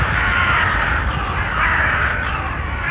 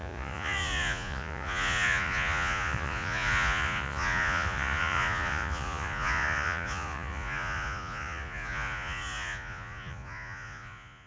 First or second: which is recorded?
first